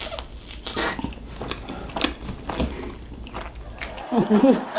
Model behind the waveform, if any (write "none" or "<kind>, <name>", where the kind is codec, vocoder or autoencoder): none